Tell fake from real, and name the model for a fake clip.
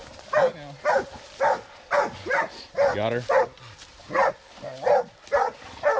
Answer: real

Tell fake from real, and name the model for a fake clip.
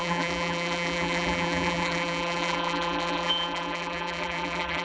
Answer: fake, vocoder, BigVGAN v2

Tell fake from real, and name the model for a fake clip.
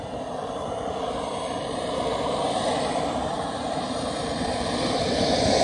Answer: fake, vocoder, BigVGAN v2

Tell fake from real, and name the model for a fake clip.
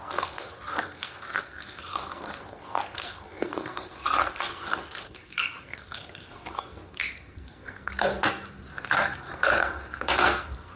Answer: fake, codec, SNAC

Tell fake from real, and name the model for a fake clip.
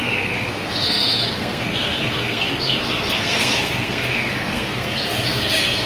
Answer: fake, codec, SNAC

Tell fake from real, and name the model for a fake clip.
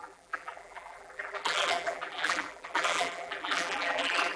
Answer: fake, vocoder, BigVGAN v2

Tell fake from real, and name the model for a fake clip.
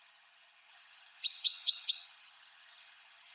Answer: fake, vocoder, HiFi-GAN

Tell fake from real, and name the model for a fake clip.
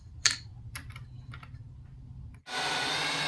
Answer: real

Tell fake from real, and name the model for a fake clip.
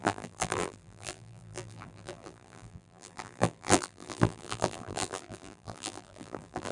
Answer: fake, vocoder, BigVGAN v2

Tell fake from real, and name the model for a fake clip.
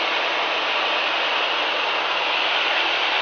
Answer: real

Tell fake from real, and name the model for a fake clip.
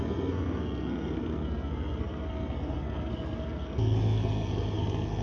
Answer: fake, codec, SNAC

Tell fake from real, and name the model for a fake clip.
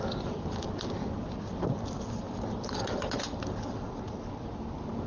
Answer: real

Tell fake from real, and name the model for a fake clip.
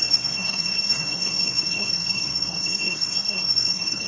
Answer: fake, codec, SNAC